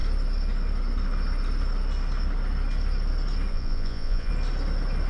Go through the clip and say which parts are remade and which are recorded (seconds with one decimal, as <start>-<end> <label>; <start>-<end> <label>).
0.0-3.5 recorded; 3.5-4.3 remade; 4.3-5.1 recorded